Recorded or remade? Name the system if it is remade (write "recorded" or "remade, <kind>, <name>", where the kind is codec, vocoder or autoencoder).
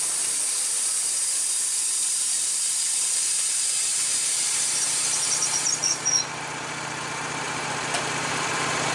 remade, vocoder, BigVGAN v2